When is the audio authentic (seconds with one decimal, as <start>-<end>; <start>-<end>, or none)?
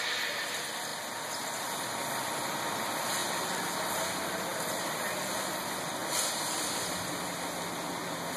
0.0-3.2; 3.8-4.5; 5.3-8.4